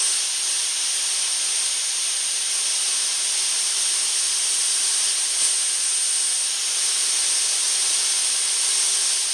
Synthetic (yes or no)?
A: no